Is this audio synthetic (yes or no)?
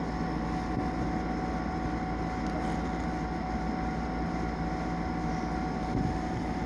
no